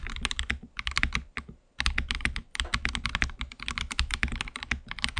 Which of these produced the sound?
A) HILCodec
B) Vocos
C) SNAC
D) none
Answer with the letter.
D